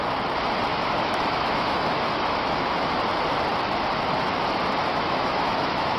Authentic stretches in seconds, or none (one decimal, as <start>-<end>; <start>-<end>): 0.0-0.7; 3.0-4.9